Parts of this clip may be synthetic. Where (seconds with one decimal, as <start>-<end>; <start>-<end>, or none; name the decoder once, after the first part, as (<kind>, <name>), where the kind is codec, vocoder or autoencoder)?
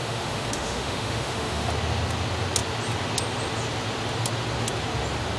0.0-1.7 (autoencoder, DAC-VAE)